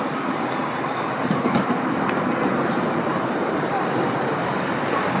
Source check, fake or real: real